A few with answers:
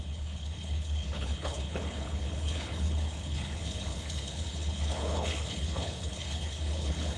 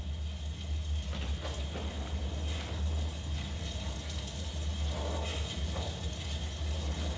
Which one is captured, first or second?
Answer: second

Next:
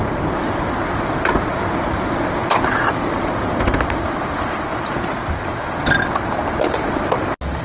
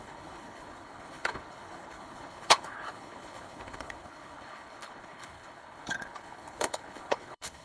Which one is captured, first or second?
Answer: first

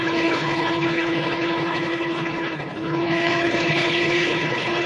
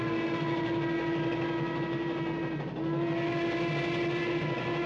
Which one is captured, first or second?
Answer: second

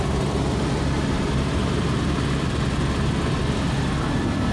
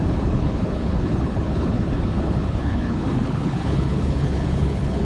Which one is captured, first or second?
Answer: first